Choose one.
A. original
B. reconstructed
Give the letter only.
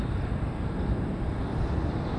A